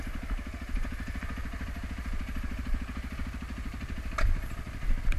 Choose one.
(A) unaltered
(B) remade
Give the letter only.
A